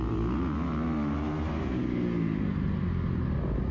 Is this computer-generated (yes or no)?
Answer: no